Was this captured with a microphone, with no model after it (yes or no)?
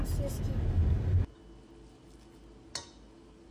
yes